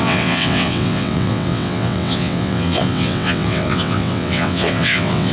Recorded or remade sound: remade